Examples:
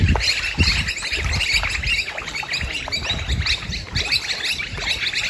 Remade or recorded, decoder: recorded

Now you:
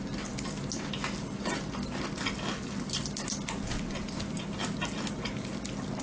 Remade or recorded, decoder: recorded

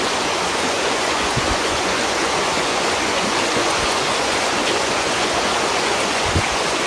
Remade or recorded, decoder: remade, vocoder, Vocos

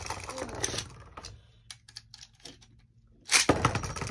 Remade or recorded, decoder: recorded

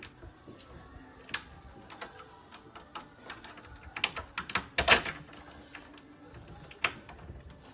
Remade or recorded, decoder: recorded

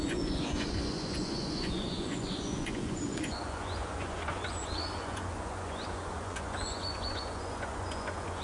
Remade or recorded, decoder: remade, vocoder, Vocos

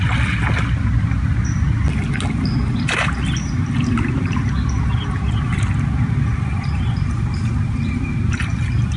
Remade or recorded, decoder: recorded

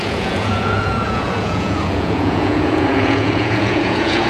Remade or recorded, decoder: remade, vocoder, Vocos